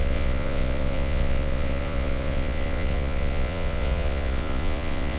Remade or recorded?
remade